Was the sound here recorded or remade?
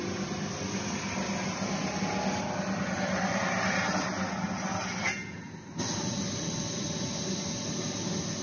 recorded